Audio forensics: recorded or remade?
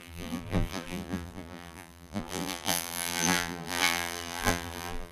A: remade